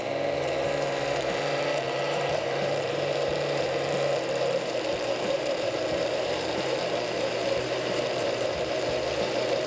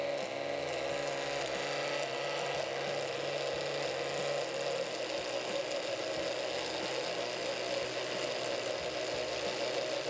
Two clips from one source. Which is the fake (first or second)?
first